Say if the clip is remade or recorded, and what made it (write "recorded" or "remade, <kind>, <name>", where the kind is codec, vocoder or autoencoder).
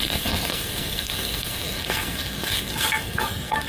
remade, codec, SNAC